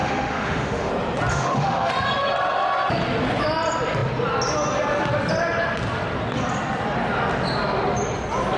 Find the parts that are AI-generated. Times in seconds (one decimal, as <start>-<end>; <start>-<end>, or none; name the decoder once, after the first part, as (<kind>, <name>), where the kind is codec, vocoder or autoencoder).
0.0-0.9 (autoencoder, DAC-VAE); 1.3-1.9